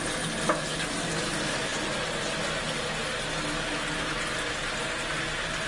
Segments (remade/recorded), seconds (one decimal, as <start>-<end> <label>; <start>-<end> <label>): 0.0-5.7 recorded